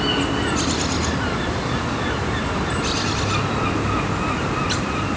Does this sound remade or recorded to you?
recorded